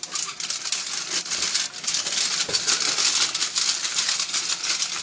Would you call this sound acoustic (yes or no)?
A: yes